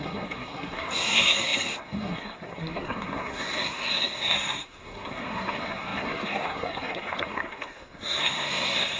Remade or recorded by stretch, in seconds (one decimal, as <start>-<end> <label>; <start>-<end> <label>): 0.0-9.0 remade